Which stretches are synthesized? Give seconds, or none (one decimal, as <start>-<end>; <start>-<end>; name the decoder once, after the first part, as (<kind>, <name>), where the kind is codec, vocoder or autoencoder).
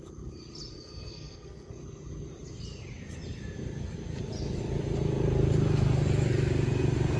0.7-1.7 (codec, SNAC)